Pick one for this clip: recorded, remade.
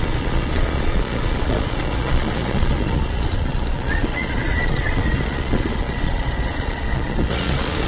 remade